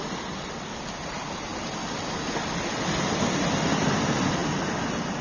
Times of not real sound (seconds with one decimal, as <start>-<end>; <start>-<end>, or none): none